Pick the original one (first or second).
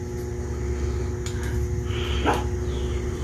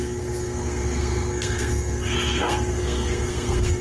first